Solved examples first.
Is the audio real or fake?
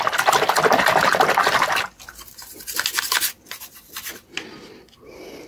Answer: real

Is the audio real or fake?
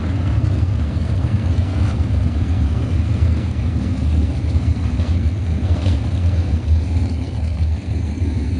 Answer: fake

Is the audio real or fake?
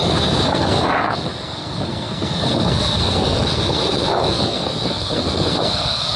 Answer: fake